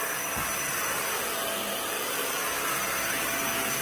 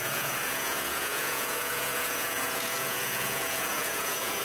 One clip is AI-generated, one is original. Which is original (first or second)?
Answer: first